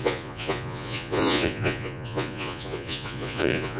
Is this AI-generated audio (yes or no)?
yes